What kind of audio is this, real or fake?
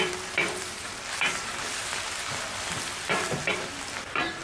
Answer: fake